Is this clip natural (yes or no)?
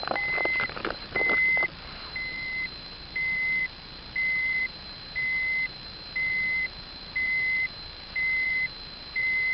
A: no